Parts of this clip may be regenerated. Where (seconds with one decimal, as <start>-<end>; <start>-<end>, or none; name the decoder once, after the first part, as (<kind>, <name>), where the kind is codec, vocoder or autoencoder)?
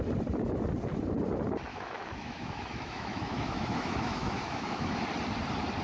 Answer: 1.7-5.0 (autoencoder, DAC-VAE)